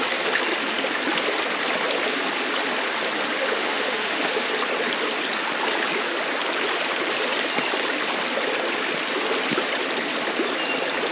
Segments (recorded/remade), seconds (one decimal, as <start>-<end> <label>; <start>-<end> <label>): 0.0-3.4 recorded; 3.4-4.5 remade; 4.5-11.1 recorded